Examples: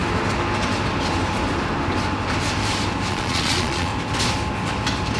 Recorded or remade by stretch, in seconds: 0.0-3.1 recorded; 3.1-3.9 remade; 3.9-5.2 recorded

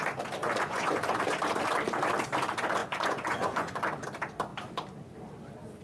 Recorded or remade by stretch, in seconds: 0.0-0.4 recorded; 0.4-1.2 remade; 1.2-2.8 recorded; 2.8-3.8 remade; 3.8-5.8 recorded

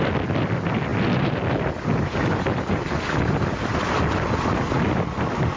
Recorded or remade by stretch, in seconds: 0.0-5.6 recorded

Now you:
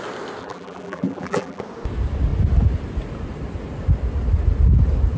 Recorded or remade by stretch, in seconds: 0.0-0.4 recorded; 0.4-1.6 remade; 1.6-5.2 recorded

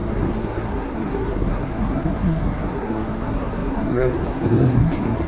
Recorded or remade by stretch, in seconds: 0.0-5.3 remade

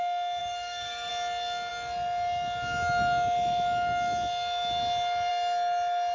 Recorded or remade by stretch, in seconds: 0.0-0.4 recorded; 0.4-1.1 remade; 1.1-6.1 recorded

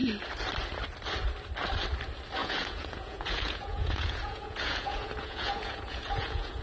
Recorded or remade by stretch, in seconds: 0.0-2.4 recorded; 2.4-6.6 remade